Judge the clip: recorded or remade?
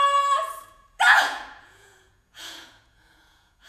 remade